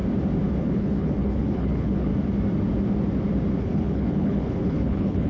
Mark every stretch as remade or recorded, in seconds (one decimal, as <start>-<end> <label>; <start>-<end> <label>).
0.0-0.6 recorded; 0.6-2.1 remade; 2.1-3.6 recorded; 3.6-5.3 remade